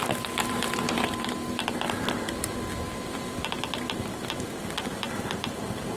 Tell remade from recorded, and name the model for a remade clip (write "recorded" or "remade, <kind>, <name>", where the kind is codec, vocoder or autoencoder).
recorded